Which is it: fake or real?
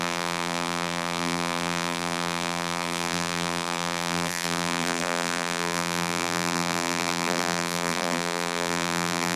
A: fake